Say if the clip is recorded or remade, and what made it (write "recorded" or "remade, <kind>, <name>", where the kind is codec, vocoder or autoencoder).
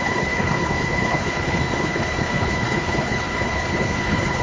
remade, codec, HILCodec